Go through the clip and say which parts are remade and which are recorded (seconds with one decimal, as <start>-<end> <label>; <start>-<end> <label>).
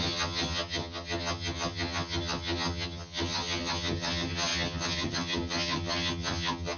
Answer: 0.0-6.8 remade